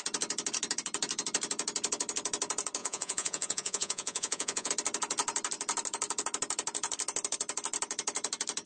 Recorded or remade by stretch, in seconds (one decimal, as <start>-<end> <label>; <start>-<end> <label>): 0.0-2.8 recorded; 2.8-4.7 remade; 4.7-8.7 recorded